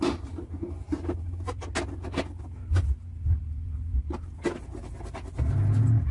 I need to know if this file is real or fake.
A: real